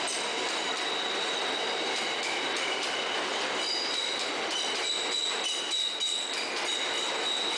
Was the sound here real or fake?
real